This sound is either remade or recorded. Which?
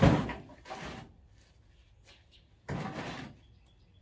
recorded